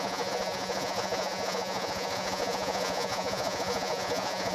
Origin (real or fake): fake